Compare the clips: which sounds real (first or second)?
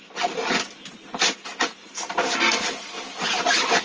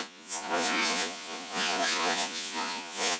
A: first